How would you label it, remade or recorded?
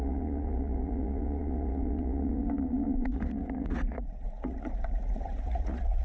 remade